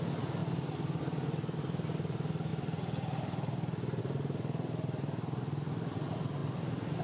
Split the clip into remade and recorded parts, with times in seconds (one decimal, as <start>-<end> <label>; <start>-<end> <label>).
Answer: 0.0-7.0 recorded